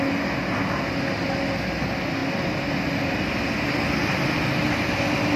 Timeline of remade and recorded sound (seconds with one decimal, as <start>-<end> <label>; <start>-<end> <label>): 0.0-5.4 recorded